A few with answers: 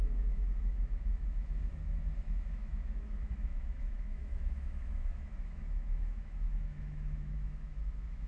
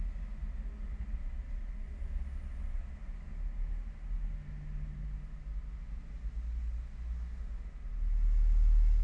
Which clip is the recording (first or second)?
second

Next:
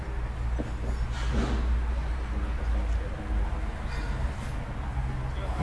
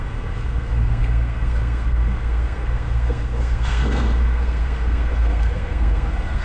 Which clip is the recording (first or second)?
first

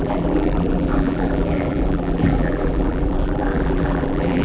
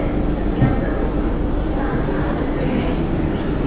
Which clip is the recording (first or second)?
second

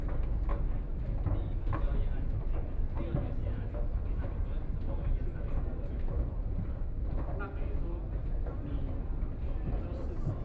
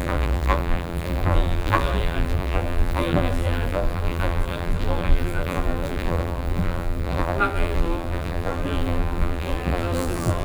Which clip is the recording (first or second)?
first